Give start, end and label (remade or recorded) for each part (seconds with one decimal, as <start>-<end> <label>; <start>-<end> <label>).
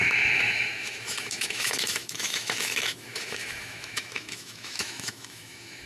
0.0-5.9 remade